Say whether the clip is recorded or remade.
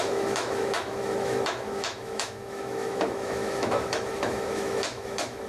remade